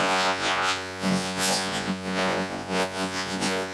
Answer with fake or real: fake